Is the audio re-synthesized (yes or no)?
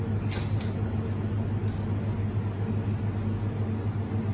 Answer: no